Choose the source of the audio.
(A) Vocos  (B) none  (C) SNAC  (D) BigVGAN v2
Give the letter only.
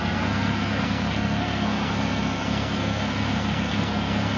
C